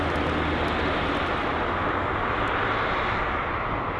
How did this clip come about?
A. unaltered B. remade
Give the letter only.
A